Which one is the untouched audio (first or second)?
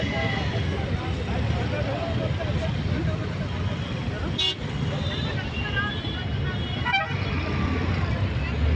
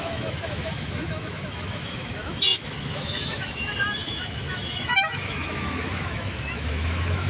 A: first